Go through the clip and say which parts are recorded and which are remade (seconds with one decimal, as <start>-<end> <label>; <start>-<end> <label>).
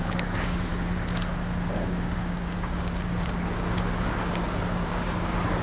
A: 0.0-0.7 remade; 0.7-1.8 recorded; 1.8-5.6 remade